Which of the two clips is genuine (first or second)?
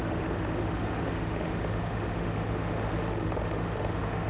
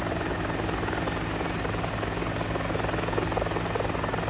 second